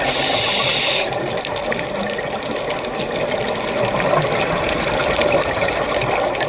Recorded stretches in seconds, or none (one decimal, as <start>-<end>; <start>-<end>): 0.0-6.5